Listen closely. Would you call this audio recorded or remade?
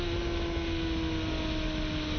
recorded